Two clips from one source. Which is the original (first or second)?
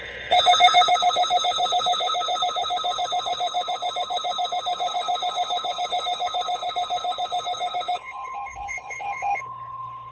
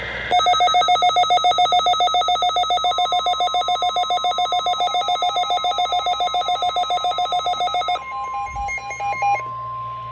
second